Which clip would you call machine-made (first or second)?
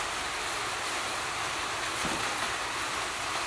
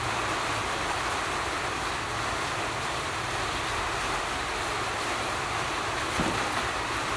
second